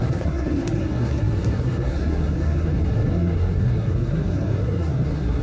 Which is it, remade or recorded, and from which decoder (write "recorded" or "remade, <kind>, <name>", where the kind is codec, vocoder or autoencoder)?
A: remade, codec, SNAC